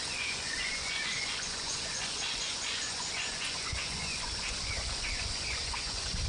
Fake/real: fake